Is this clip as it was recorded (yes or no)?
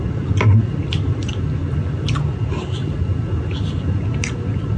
yes